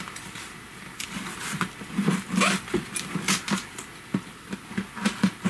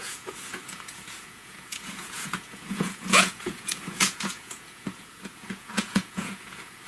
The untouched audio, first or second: first